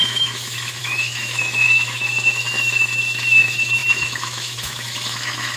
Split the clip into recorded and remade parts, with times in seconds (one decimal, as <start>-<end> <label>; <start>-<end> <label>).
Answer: 0.0-5.6 remade